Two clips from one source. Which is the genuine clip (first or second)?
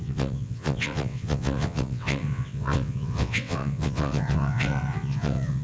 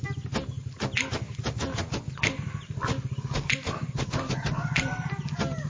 second